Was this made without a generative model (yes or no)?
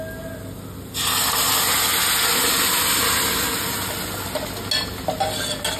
yes